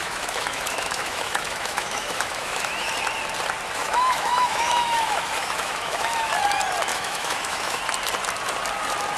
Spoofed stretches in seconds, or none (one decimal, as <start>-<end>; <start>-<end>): 0.0-2.9; 3.8-6.3; 6.9-7.8